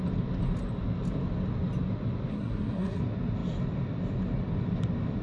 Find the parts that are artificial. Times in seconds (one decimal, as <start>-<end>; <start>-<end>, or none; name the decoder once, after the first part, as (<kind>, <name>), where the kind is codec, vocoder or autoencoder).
2.3-3.0 (codec, SNAC)